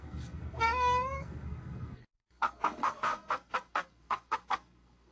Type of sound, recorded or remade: remade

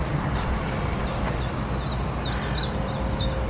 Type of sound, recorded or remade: recorded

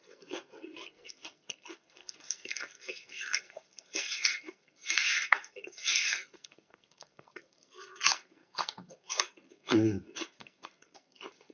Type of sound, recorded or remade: remade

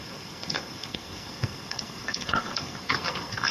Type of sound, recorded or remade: remade